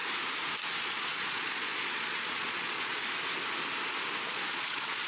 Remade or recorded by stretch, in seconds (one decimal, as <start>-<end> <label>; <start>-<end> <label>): 0.0-0.8 recorded; 0.8-3.0 remade; 3.0-4.3 recorded; 4.3-5.1 remade